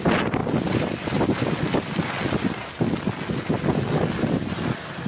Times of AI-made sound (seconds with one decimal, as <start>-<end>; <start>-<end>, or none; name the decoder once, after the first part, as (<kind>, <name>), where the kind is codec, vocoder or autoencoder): none